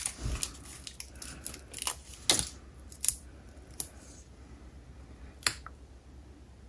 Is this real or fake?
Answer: real